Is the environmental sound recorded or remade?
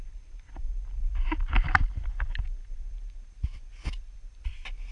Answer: remade